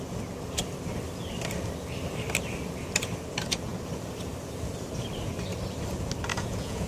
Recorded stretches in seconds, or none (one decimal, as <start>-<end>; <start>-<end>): 0.0-6.3